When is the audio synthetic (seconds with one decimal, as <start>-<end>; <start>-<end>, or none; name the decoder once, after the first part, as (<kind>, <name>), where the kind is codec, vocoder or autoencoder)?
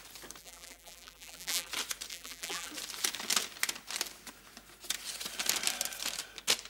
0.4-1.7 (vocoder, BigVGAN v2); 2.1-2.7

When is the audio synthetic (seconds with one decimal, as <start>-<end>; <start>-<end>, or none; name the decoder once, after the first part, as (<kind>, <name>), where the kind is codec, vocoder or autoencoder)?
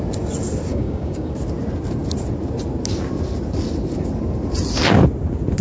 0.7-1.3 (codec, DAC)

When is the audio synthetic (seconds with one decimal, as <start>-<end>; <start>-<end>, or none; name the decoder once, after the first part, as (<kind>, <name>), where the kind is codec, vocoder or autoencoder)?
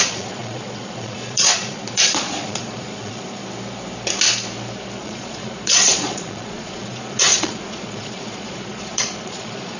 0.0-3.4 (vocoder, Vocos); 5.0-9.8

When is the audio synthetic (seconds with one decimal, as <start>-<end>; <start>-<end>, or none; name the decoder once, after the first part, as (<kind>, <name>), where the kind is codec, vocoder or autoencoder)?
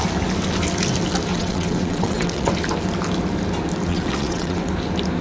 1.3-2.5 (vocoder, WaveNeXt); 3.9-4.7